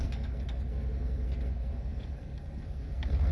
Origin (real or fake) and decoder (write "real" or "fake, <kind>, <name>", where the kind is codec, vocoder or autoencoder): fake, codec, SNAC